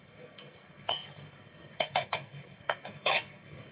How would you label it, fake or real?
fake